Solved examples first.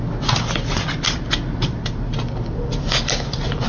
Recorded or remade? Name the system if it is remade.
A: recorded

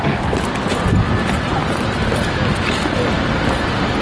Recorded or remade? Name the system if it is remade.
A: recorded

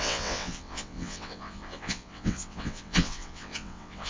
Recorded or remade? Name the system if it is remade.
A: remade, vocoder, WaveNeXt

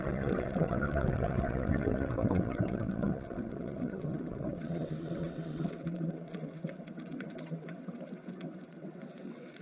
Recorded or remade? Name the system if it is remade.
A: remade, vocoder, WaveNeXt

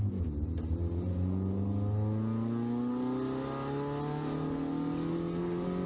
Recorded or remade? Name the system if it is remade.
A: recorded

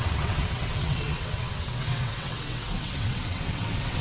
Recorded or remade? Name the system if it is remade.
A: remade, vocoder, WaveNeXt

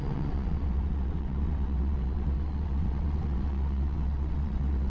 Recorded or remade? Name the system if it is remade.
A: remade, vocoder, WaveNeXt